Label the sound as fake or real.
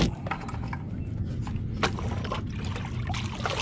real